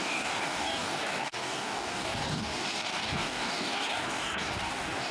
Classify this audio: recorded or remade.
remade